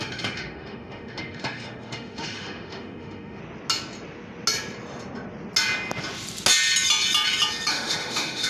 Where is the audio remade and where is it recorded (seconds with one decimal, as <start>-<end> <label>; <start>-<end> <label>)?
0.0-3.4 remade; 3.4-7.7 recorded; 7.7-8.5 remade